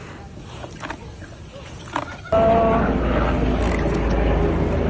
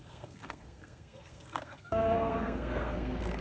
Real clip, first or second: first